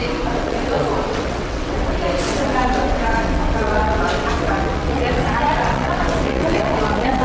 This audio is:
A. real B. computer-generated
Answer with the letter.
B